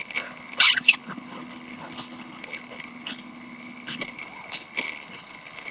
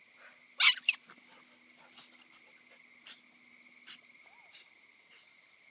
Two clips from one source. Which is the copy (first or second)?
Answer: first